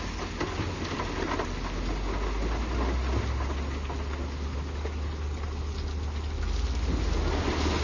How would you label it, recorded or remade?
recorded